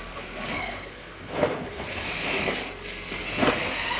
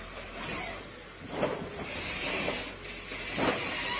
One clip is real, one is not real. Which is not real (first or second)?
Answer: first